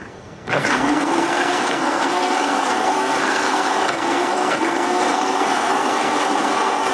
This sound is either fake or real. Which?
fake